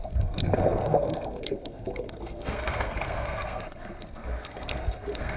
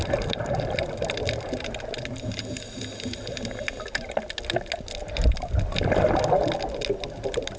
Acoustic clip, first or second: second